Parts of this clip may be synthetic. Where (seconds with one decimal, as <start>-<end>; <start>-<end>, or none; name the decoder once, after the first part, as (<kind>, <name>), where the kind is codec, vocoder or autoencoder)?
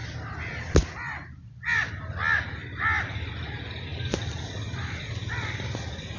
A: none